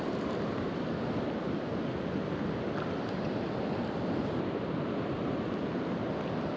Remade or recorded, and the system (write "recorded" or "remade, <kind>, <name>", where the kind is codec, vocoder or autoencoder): recorded